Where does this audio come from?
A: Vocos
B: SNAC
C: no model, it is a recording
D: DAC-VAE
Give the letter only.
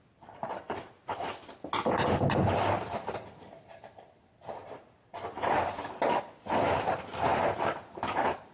C